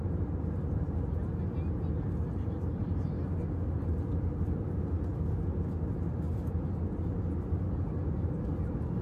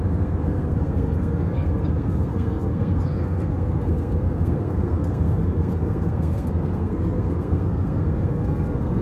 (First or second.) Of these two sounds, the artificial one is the second